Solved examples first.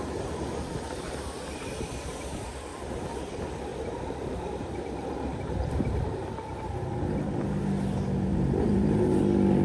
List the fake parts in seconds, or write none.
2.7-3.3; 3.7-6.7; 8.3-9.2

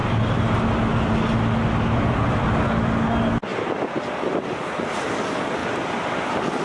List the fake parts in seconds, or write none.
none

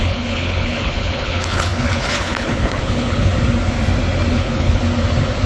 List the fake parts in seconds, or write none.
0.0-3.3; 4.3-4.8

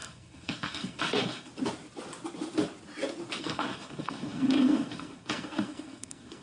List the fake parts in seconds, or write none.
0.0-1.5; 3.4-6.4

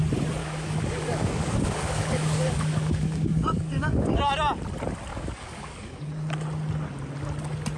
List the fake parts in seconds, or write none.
0.4-4.2; 5.1-6.0

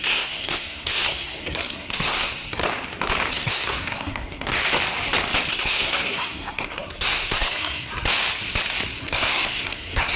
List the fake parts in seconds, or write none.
0.0-2.6; 3.3-4.6; 5.5-7.9; 9.0-10.2

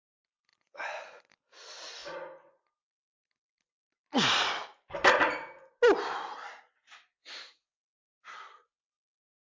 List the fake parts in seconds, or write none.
0.5-1.2; 2.0-2.6